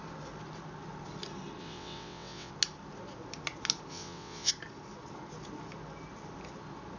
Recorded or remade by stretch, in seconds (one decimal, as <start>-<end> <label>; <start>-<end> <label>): 0.0-1.6 recorded; 1.6-2.5 remade; 2.5-3.9 recorded; 3.9-4.5 remade; 4.5-7.0 recorded

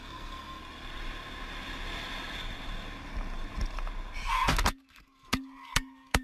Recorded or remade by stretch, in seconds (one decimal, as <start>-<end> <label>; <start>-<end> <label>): 0.0-0.6 remade; 0.6-4.3 recorded; 4.3-6.2 remade